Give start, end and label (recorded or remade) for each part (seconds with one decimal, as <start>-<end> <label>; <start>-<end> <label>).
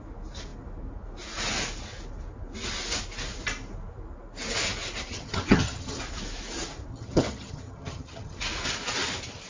0.0-5.1 recorded; 5.1-6.0 remade; 6.0-6.9 recorded; 6.9-8.4 remade; 8.4-9.5 recorded